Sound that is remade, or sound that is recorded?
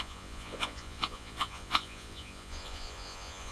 remade